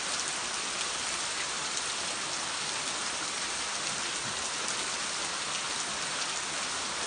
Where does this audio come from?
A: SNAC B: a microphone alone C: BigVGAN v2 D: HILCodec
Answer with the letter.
C